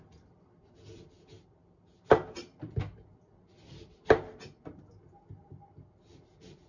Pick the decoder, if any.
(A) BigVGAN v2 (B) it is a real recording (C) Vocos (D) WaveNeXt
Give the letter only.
B